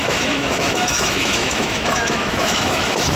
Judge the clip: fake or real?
fake